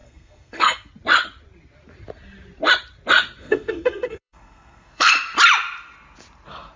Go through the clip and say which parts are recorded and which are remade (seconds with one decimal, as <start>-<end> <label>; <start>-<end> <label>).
0.0-0.9 remade; 0.9-3.4 recorded; 3.4-5.1 remade; 5.1-6.8 recorded